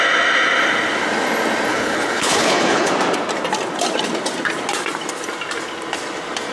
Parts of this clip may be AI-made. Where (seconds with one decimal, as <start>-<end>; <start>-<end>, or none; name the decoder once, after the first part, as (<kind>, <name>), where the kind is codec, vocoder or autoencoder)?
1.7-2.9 (codec, HILCodec)